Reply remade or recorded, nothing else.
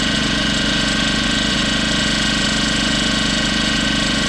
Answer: remade